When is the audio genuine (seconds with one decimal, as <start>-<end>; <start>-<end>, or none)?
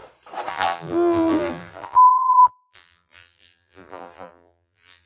0.0-0.5